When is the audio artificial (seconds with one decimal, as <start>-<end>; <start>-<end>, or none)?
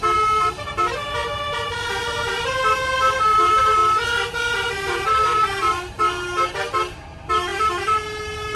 0.0-3.8; 4.7-7.5